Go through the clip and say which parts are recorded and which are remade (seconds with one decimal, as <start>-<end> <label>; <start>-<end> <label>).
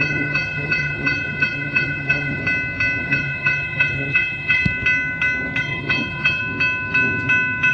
0.0-2.4 remade; 2.4-3.0 recorded; 3.0-4.6 remade; 4.6-5.6 recorded; 5.6-6.4 remade; 6.4-7.7 recorded